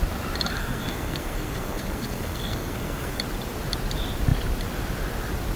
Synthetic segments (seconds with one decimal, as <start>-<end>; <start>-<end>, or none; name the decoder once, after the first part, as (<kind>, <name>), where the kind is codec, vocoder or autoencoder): 0.6-3.2 (codec, SNAC)